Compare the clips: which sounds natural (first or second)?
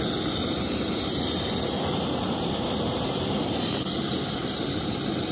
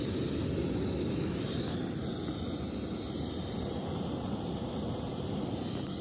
second